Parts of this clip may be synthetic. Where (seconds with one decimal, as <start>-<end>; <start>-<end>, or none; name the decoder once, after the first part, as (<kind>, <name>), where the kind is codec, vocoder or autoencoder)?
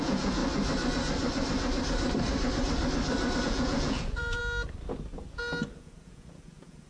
0.0-0.4 (vocoder, Vocos); 3.4-4.4; 5.7-6.9